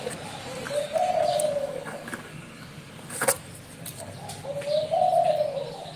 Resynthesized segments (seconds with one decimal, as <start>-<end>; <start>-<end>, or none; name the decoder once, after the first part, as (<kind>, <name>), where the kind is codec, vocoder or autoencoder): 1.3-3.3 (codec, DAC)